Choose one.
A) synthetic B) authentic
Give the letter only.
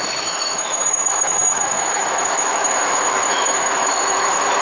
A